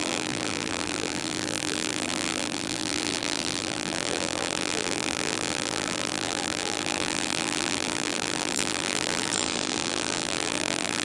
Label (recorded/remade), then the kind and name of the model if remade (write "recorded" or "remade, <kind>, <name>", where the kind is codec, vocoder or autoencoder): remade, vocoder, BigVGAN v2